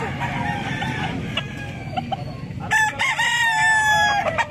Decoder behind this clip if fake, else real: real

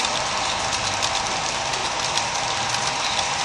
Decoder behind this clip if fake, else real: real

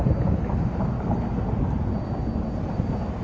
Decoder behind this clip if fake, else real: real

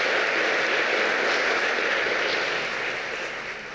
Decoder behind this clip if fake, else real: real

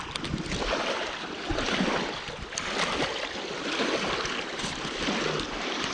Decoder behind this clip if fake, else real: real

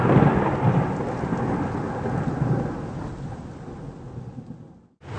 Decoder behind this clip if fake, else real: real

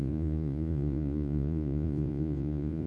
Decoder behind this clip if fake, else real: fake, vocoder, Vocos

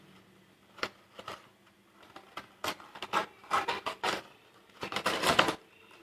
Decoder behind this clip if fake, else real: real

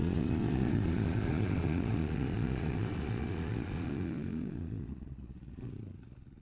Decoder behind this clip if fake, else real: fake, vocoder, Vocos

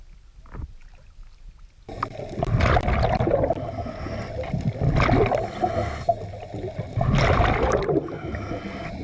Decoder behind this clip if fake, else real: real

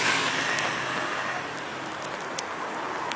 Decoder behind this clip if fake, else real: real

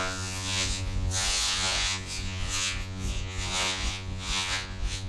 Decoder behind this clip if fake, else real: fake, vocoder, Vocos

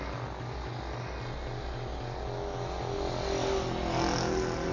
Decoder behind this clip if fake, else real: real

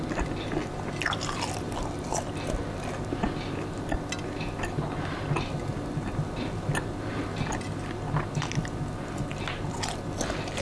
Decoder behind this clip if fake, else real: real